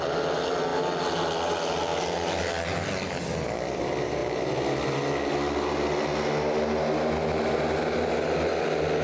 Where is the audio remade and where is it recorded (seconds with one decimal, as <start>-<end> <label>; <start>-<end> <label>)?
0.0-9.0 recorded